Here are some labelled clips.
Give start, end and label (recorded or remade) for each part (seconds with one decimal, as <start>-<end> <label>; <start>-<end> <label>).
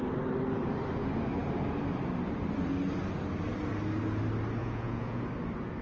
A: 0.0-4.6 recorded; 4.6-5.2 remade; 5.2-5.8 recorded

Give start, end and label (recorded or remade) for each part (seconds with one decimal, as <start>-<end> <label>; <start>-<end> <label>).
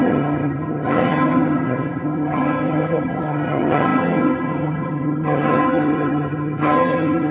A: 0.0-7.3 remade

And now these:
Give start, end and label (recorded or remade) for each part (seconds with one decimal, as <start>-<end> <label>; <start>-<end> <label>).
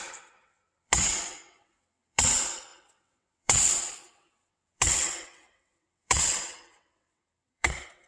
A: 0.0-8.1 remade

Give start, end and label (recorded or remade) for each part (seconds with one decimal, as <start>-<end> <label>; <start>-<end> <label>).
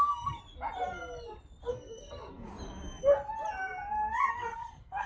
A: 0.0-0.4 remade; 0.4-1.7 recorded; 1.7-2.5 remade; 2.5-4.3 recorded; 4.3-5.1 remade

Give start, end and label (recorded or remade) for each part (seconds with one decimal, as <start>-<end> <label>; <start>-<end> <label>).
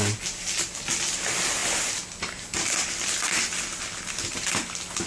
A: 0.0-5.1 recorded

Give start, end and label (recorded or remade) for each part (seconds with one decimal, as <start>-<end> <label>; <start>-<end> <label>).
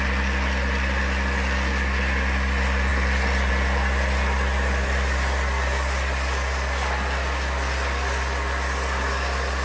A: 0.0-9.6 recorded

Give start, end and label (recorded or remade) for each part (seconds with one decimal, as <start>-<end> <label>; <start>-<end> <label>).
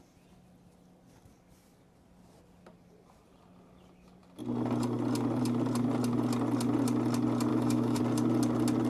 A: 0.0-7.5 recorded; 7.5-8.0 remade; 8.0-8.9 recorded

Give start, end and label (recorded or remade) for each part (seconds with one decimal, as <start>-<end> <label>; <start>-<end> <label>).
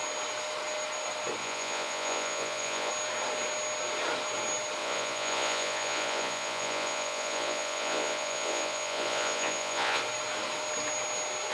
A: 0.0-1.4 recorded; 1.4-2.9 remade; 2.9-4.8 recorded; 4.8-10.0 remade; 10.0-11.5 recorded